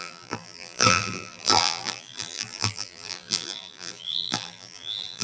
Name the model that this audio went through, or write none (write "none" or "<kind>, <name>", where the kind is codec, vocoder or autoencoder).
vocoder, BigVGAN v2